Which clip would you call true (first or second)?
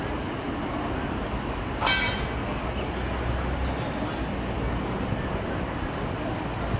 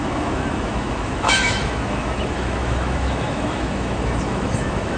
first